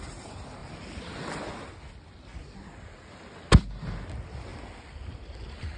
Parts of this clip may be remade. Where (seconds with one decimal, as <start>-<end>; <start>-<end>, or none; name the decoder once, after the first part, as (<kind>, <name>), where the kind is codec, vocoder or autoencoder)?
0.6-1.1 (vocoder, BigVGAN v2); 2.3-3.1; 4.5-5.8